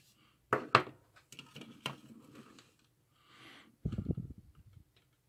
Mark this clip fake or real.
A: real